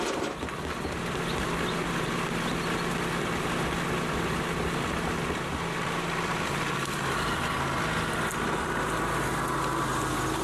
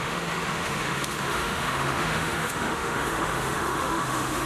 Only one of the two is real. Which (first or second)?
first